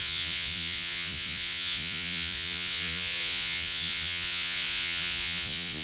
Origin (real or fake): fake